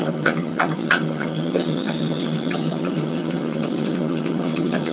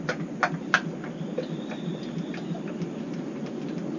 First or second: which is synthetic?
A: first